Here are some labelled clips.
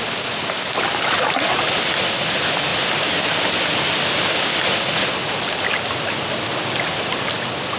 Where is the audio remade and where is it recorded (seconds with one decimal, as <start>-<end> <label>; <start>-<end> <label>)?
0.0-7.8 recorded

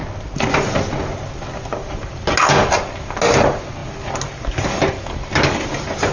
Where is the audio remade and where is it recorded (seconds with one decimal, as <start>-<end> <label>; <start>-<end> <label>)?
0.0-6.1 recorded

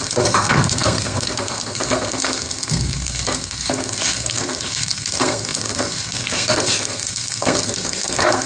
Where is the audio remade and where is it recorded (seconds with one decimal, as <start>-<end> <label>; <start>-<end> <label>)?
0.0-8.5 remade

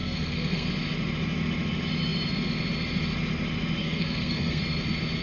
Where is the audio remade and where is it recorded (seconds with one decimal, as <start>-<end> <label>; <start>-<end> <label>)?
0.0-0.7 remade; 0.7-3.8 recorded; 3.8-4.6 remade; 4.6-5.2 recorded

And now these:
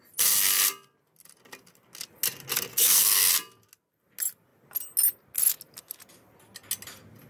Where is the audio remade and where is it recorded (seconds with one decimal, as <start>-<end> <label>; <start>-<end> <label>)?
0.0-2.7 recorded; 2.7-3.3 remade; 3.3-7.3 recorded